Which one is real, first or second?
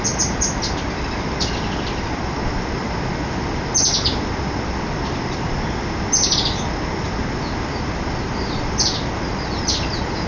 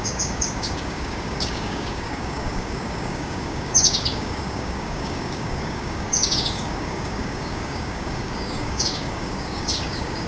first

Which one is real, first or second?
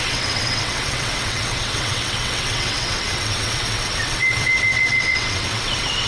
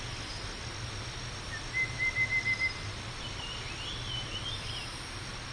second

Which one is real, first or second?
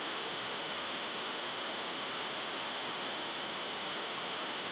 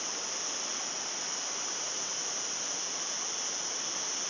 second